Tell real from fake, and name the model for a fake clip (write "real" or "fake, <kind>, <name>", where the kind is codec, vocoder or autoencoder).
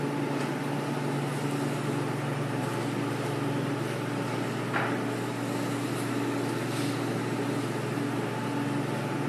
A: real